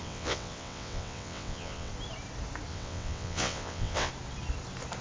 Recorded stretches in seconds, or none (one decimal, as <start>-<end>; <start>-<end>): 1.9-2.7; 4.1-5.0

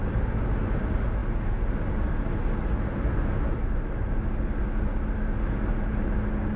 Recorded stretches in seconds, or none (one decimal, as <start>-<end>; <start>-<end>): 0.0-6.6

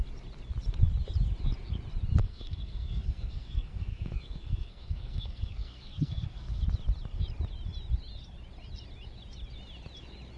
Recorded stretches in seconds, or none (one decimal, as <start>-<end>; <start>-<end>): 0.0-2.2; 6.6-10.4

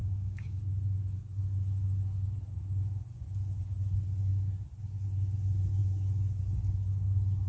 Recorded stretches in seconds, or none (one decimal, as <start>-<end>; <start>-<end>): 0.6-7.5

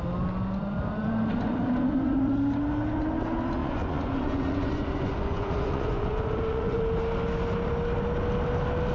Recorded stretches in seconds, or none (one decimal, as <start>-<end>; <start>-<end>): 0.0-3.6; 6.8-8.9

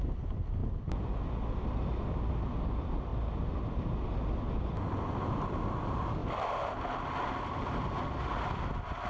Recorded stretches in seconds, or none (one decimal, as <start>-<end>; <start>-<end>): 0.0-9.1